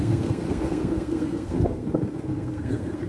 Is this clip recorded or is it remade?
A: remade